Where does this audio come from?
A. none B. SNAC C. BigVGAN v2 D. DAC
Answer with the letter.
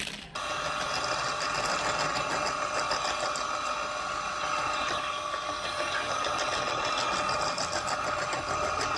A